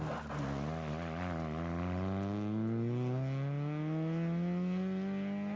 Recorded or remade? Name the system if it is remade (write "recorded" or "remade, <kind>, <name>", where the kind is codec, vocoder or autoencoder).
recorded